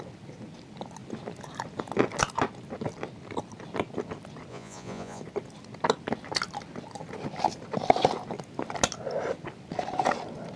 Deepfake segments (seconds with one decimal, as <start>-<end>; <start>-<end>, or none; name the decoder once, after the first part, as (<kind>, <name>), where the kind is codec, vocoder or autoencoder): 4.5-5.2 (vocoder, Vocos)